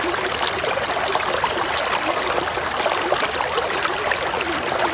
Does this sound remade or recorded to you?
recorded